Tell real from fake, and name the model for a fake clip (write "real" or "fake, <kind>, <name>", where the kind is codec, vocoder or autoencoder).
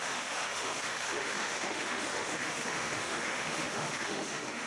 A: fake, autoencoder, DAC-VAE